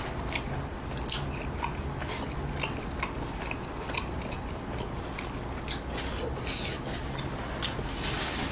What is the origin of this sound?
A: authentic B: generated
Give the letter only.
A